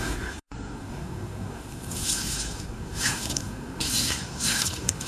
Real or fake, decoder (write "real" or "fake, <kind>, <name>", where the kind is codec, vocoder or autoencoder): fake, codec, SNAC